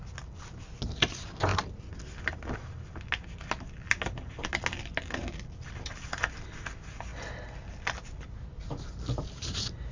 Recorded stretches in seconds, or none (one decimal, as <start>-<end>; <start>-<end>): 0.0-9.9